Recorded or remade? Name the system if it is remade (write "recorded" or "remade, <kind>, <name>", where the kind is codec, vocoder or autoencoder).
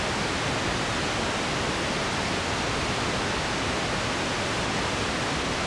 recorded